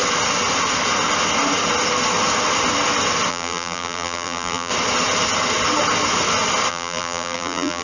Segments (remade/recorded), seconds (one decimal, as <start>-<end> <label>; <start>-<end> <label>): 0.0-3.3 recorded; 3.3-4.7 remade; 4.7-6.7 recorded; 6.7-7.8 remade